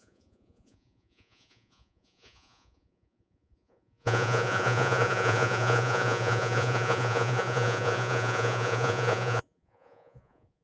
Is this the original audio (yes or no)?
no